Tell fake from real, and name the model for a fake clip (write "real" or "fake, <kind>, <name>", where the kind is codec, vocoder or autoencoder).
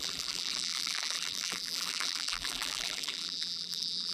fake, vocoder, BigVGAN v2